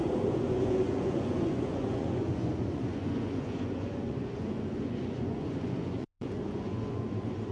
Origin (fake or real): fake